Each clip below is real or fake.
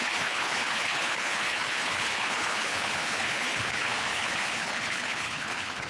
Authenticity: fake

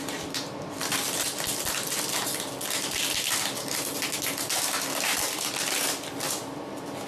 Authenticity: real